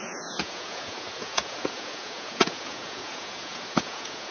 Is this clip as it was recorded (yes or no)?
no